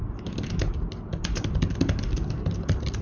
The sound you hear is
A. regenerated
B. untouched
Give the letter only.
B